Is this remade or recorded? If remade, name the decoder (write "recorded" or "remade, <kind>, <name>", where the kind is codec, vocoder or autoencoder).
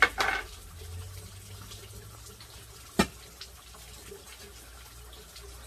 recorded